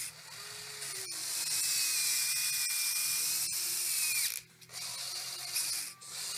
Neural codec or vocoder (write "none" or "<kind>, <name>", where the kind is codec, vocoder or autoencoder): none